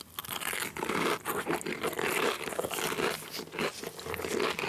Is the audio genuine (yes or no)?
yes